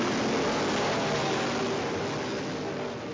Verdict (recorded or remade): recorded